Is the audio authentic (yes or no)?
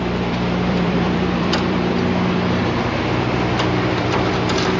no